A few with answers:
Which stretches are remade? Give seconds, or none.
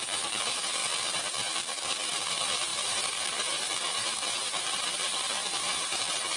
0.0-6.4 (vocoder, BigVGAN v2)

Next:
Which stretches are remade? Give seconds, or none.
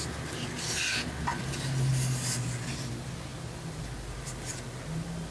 1.3-1.9 (vocoder, BigVGAN v2)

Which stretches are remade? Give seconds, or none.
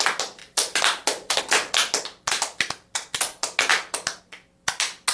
0.4-1.4 (vocoder, BigVGAN v2)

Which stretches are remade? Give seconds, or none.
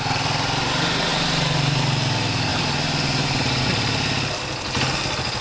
1.1-1.8 (vocoder, BigVGAN v2); 2.5-3.6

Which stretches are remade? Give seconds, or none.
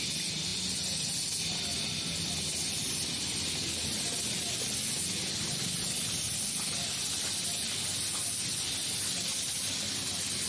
none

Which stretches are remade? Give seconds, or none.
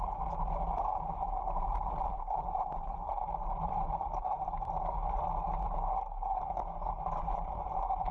0.0-5.2 (vocoder, BigVGAN v2); 6.4-8.1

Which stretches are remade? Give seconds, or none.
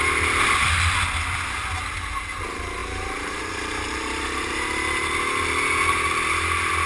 2.8-4.5 (vocoder, BigVGAN v2)